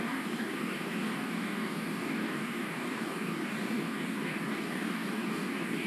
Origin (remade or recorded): remade